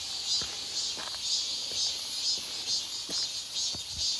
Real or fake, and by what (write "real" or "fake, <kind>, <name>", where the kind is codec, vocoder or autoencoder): real